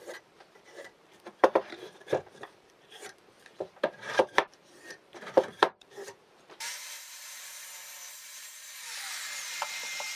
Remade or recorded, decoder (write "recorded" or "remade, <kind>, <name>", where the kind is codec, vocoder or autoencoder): remade, vocoder, BigVGAN v2